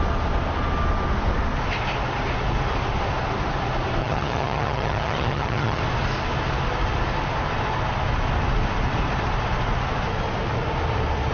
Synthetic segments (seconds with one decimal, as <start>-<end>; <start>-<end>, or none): 4.0-5.8